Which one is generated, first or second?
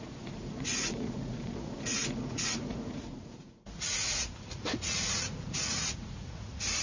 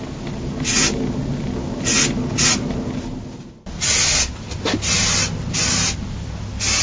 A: first